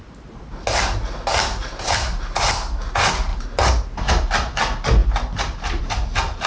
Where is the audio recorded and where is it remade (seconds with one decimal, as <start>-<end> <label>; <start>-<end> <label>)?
0.0-1.6 recorded; 1.6-2.4 remade; 2.4-3.3 recorded; 3.3-4.1 remade; 4.1-6.5 recorded